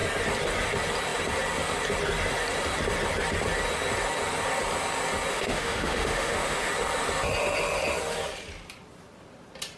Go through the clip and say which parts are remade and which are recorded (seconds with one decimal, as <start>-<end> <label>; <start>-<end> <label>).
0.0-5.3 recorded; 5.3-6.7 remade; 6.7-9.8 recorded

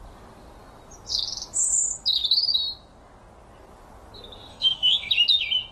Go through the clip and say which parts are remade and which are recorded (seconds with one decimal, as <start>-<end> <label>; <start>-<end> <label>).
0.0-4.5 recorded; 4.5-5.1 remade; 5.1-5.7 recorded

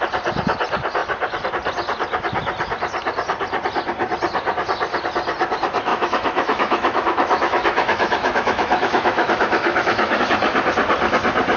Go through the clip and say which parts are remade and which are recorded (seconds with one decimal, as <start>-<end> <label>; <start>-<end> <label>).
0.0-5.9 recorded; 5.9-10.2 remade; 10.2-11.6 recorded

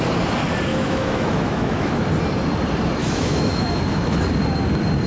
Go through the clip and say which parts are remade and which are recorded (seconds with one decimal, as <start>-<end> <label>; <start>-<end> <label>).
0.0-0.7 recorded; 0.7-1.9 remade; 1.9-3.0 recorded; 3.0-4.2 remade; 4.2-5.1 recorded